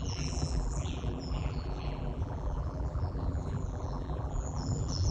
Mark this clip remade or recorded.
remade